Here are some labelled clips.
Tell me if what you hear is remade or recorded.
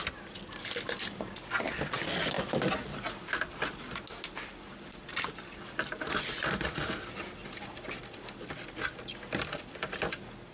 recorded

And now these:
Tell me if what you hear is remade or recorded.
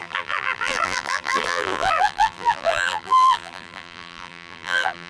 remade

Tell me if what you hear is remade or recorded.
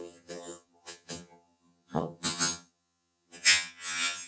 remade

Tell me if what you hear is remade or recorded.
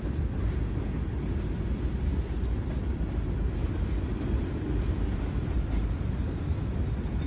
recorded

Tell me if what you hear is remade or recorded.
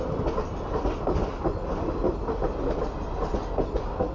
recorded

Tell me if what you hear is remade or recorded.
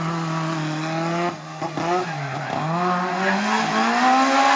recorded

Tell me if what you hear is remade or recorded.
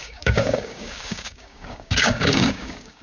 remade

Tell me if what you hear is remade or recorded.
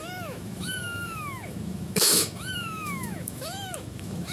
remade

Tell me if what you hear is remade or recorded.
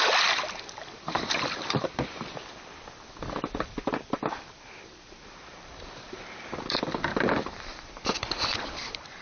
remade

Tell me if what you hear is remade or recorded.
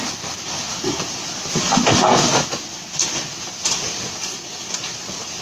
recorded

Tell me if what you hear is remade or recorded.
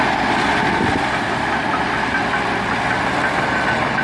recorded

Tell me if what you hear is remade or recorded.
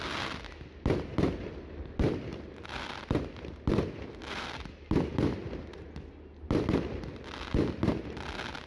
recorded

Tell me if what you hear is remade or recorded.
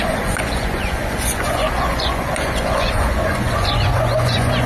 remade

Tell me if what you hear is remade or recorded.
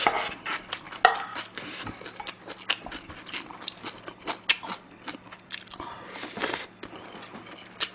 recorded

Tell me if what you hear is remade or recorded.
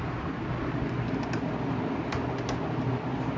recorded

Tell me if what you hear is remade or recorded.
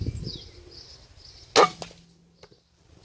recorded